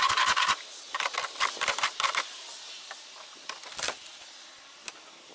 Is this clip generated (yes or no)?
no